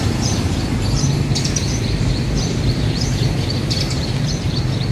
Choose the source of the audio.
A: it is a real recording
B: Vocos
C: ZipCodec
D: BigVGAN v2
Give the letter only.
D